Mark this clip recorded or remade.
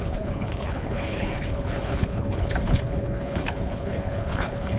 remade